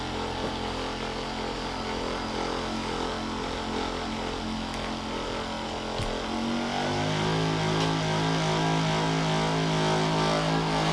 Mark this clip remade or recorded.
recorded